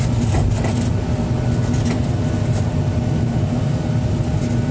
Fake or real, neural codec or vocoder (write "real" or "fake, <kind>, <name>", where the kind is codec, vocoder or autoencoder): real